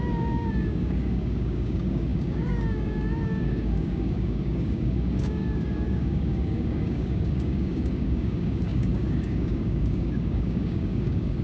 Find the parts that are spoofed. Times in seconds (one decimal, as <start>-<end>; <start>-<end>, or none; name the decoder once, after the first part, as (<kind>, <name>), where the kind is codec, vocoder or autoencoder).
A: 0.0-11.4 (codec, DAC)